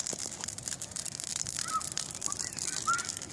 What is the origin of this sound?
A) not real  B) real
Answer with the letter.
B